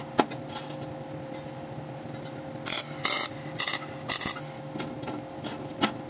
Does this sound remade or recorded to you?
recorded